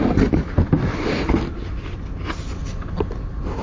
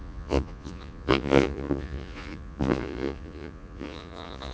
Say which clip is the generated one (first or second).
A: second